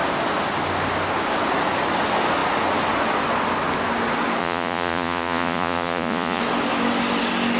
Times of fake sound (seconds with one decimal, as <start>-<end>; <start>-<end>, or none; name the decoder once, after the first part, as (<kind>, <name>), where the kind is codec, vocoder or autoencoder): 4.4-6.4 (vocoder, Vocos)